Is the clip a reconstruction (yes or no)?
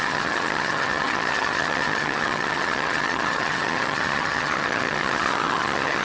yes